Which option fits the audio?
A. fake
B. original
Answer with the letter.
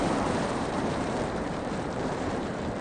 A